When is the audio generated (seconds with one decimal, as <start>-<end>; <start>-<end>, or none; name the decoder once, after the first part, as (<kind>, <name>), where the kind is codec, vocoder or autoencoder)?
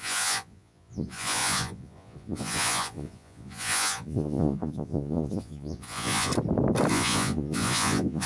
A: 0.0-6.3 (vocoder, Vocos); 6.9-8.3